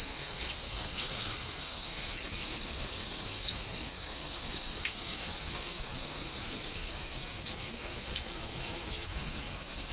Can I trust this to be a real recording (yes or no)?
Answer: no